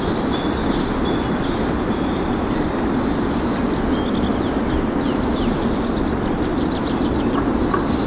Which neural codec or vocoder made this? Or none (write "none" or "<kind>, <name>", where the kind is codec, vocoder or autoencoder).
none